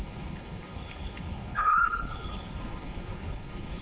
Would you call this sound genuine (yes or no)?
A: no